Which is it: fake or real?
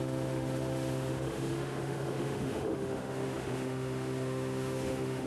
fake